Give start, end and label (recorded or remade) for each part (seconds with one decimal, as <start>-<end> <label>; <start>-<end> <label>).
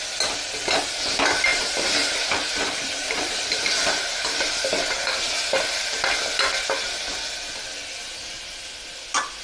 0.0-1.5 recorded; 1.5-4.7 remade; 4.7-9.4 recorded